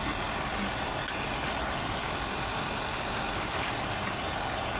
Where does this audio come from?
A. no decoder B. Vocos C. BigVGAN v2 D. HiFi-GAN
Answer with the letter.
A